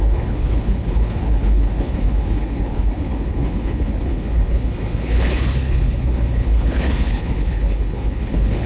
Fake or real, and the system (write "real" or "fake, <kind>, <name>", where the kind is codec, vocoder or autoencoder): fake, codec, HILCodec